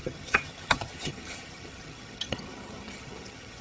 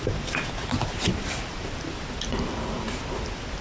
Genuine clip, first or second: second